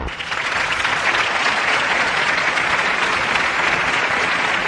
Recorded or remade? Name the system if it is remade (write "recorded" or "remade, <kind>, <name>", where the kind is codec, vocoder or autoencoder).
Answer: remade, vocoder, Vocos